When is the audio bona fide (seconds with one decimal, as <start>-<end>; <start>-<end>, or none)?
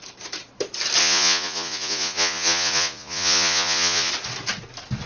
0.0-1.0; 4.1-5.1